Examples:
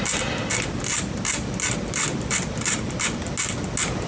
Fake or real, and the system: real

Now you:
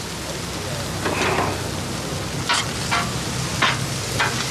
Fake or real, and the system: real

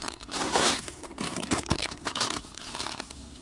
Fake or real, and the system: fake, codec, SNAC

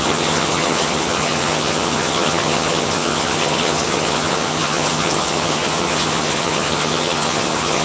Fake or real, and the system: fake, vocoder, HiFi-GAN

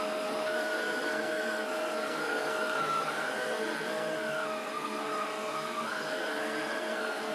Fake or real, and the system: fake, codec, SNAC